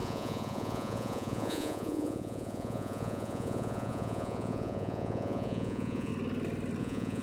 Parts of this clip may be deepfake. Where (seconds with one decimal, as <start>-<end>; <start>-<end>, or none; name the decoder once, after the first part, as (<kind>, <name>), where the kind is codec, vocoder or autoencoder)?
0.0-6.1 (vocoder, Vocos); 6.8-7.2